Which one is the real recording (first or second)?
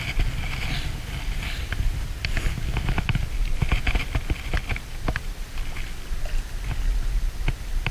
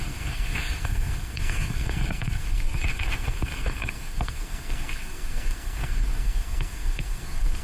first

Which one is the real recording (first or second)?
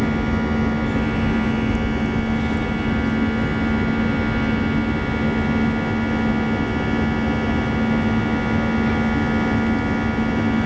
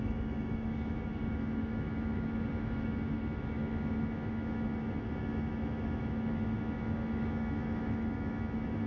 first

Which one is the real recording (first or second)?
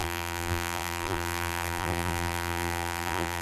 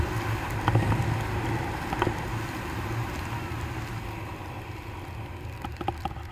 second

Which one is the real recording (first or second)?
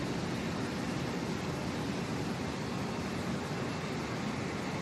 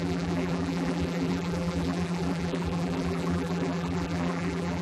first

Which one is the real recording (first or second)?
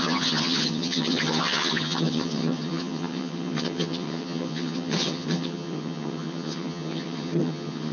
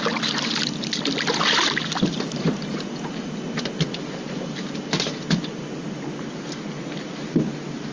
second